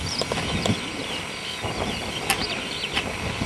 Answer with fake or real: real